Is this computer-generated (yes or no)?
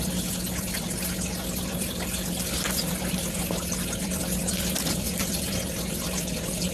yes